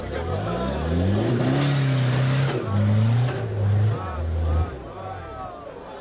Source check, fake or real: real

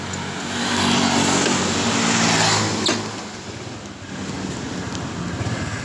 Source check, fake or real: real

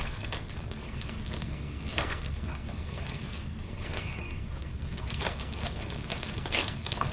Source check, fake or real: fake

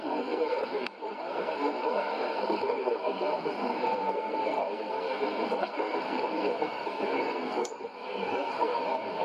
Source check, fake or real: fake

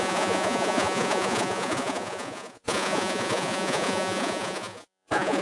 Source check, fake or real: fake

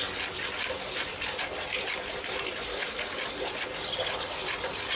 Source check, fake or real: real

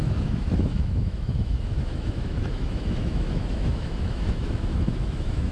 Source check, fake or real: fake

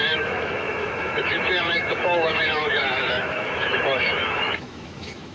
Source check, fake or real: fake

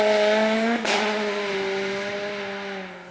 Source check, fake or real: real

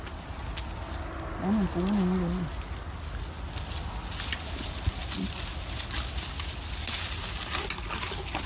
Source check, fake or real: real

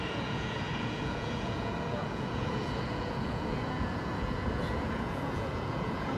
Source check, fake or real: fake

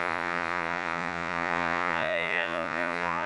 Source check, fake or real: fake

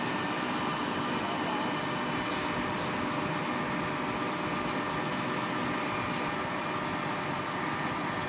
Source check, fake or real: real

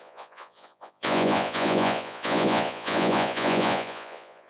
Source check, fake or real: fake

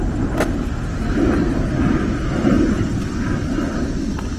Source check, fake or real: real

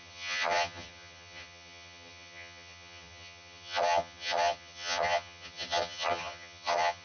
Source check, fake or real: fake